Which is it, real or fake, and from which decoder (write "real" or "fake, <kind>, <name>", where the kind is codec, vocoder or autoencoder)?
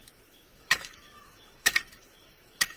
fake, autoencoder, DAC-VAE